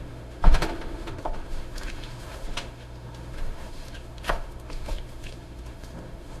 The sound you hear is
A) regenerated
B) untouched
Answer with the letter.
A